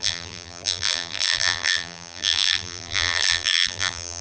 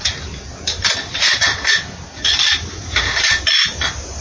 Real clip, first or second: second